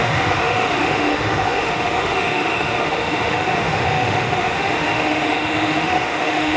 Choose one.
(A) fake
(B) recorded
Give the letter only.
A